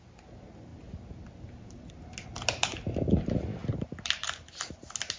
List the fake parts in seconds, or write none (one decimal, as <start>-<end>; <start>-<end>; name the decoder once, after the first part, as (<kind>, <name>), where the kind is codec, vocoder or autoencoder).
0.7-1.9 (vocoder, BigVGAN v2); 3.6-4.1